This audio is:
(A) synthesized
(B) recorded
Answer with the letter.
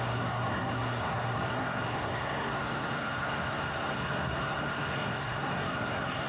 A